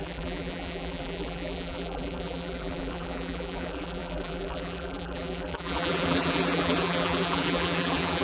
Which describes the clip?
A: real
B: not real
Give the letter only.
B